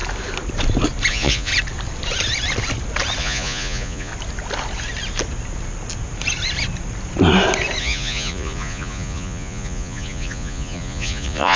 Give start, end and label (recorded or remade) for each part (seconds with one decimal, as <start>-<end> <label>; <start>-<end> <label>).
0.0-1.1 recorded; 1.1-1.5 remade; 1.5-3.2 recorded; 3.2-4.1 remade; 4.1-7.8 recorded; 7.8-11.6 remade